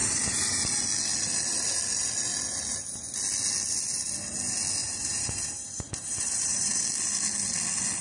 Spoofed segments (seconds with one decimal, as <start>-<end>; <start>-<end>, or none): 0.0-0.8; 4.8-6.8

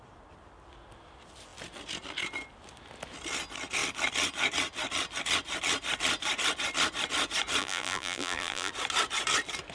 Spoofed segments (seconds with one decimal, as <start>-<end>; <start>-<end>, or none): 7.6-8.7

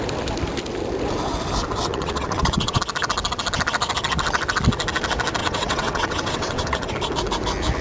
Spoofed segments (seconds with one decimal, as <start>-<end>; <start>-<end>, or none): 1.9-2.8; 5.4-6.9